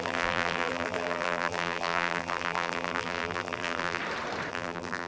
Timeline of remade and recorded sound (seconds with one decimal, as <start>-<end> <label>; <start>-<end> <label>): 0.0-4.0 remade; 4.0-4.5 recorded; 4.5-5.1 remade